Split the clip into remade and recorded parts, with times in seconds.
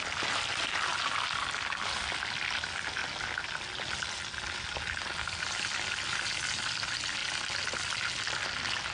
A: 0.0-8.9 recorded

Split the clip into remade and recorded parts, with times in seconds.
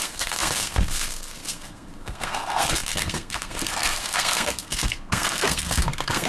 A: 0.0-6.3 remade